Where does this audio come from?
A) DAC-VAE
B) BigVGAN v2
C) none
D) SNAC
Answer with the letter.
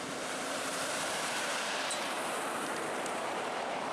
B